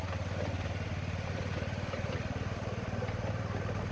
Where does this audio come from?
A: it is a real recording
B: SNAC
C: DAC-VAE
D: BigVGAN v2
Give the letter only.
A